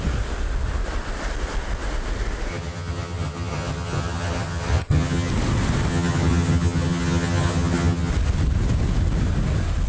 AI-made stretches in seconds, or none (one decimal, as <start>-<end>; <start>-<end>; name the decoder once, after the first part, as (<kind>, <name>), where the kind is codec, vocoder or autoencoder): 2.5-5.3 (vocoder, HiFi-GAN); 5.9-8.1